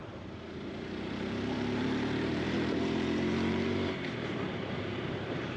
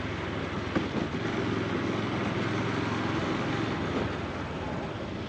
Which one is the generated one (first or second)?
first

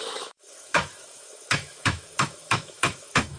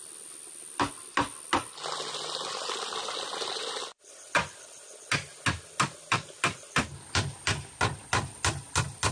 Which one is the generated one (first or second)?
first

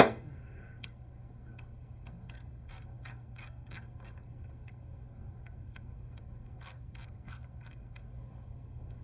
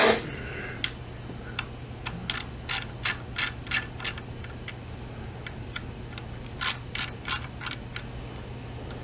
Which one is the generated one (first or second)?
first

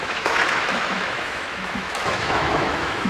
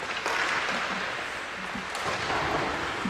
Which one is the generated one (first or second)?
first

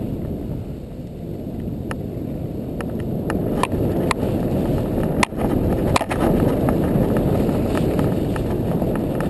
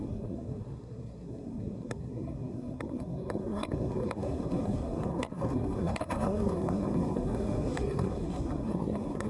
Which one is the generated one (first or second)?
second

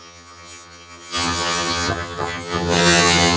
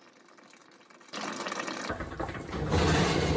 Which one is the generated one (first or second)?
first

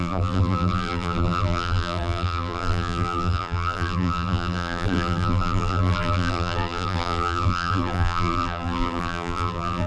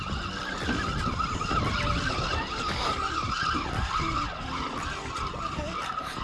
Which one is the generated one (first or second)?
first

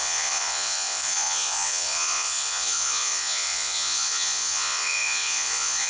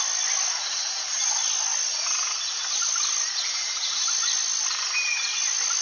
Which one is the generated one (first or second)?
first